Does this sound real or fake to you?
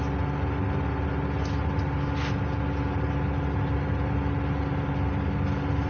real